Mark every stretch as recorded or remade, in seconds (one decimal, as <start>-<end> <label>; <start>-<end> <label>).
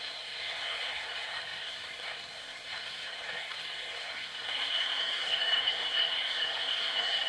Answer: 0.0-7.3 remade